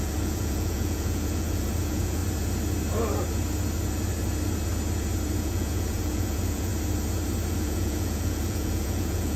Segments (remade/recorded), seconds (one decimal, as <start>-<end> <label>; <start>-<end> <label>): 0.0-2.2 remade; 2.2-5.4 recorded; 5.4-6.7 remade; 6.7-7.5 recorded; 7.5-9.4 remade